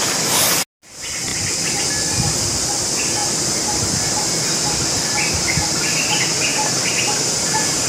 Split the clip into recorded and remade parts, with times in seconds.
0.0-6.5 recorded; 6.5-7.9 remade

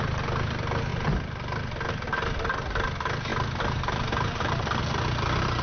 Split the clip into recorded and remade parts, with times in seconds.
0.0-3.3 recorded; 3.3-4.8 remade; 4.8-5.6 recorded

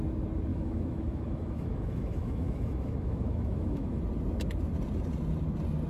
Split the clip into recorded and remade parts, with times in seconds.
0.0-0.5 recorded; 0.5-4.0 remade; 4.0-5.9 recorded

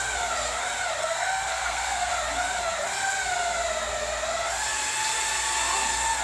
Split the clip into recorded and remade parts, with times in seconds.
0.0-1.0 recorded; 1.0-2.1 remade; 2.1-6.2 recorded

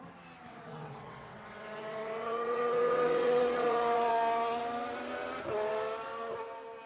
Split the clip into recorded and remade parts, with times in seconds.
0.0-0.5 recorded; 0.5-4.1 remade; 4.1-6.9 recorded